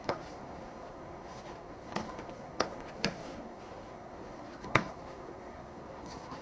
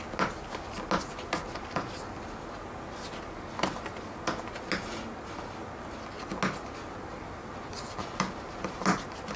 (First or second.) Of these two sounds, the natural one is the second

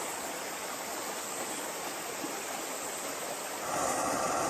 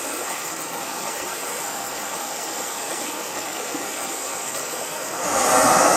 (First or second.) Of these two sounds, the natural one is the first